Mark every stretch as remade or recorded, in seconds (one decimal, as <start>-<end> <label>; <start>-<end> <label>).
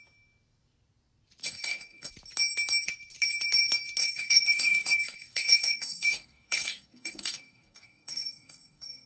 0.0-1.4 recorded; 1.4-2.1 remade; 2.1-4.0 recorded; 4.0-9.1 remade